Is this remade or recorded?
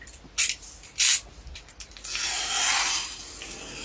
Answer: recorded